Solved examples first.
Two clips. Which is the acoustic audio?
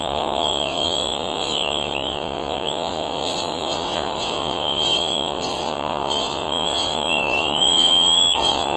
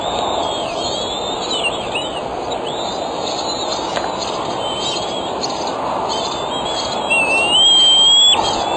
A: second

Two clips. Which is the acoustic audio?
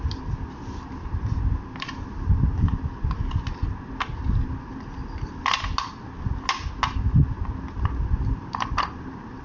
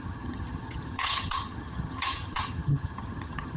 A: first